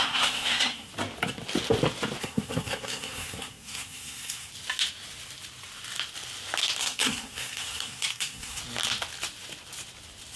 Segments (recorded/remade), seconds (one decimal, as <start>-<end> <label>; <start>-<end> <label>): 0.0-0.9 remade; 0.9-2.2 recorded; 2.2-4.5 remade; 4.5-6.8 recorded; 6.8-8.6 remade; 8.6-10.4 recorded